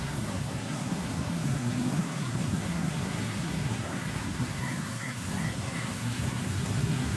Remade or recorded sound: remade